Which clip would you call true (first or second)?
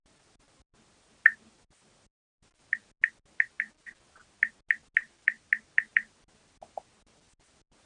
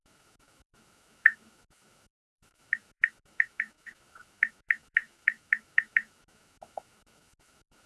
first